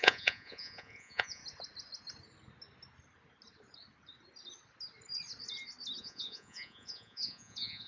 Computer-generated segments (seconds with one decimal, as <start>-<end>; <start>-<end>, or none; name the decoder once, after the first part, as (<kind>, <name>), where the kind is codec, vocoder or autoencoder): 0.0-1.4 (vocoder, Vocos); 6.0-7.9